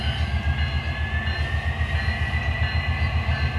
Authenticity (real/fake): real